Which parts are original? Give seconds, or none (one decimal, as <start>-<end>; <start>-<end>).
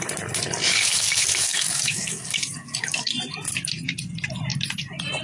0.0-0.6; 3.1-5.2